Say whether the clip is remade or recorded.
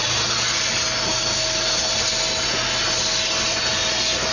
recorded